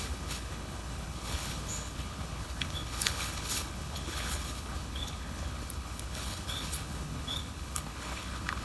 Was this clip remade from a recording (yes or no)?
yes